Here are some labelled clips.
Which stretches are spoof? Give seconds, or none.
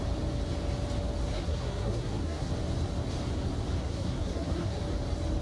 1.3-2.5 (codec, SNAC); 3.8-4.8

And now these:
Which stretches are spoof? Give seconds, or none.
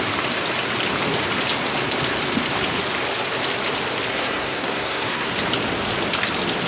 4.1-5.3 (codec, SNAC)